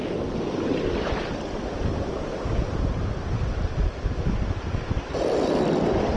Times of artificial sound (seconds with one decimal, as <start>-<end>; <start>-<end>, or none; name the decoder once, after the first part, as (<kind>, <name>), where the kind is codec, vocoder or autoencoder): 0.0-6.2 (vocoder, BigVGAN v2)